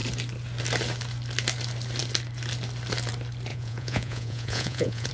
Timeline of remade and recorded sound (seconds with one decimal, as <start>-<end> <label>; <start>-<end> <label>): 0.0-3.5 recorded; 3.5-5.1 remade